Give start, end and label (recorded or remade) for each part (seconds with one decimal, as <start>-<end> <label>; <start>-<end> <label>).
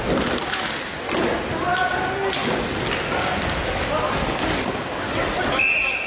0.0-6.1 recorded